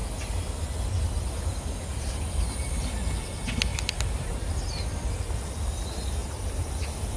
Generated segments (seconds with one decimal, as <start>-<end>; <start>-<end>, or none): 0.0-0.5; 1.9-2.8; 3.7-4.5; 6.2-6.7